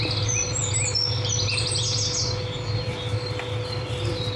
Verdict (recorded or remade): recorded